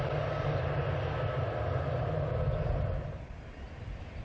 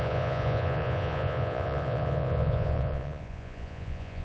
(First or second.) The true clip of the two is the first